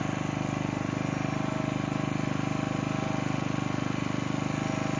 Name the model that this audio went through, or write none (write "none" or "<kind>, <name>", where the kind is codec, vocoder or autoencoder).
none